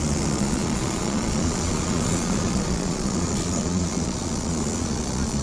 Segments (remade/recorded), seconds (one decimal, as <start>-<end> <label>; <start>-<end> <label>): 0.0-5.4 remade